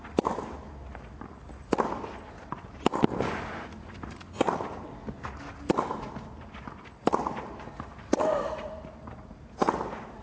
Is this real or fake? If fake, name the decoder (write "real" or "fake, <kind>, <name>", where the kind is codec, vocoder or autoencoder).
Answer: real